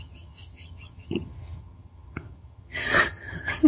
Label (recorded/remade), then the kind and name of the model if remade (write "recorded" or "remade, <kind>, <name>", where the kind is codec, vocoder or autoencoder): remade, vocoder, HiFi-GAN